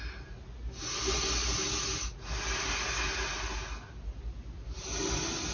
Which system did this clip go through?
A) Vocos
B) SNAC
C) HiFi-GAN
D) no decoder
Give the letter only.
D